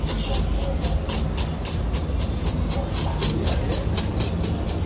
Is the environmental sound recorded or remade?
recorded